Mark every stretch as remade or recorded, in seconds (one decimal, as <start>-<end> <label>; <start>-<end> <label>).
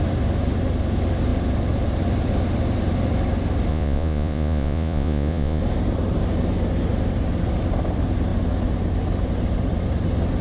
0.0-3.7 recorded; 3.7-5.6 remade; 5.6-10.4 recorded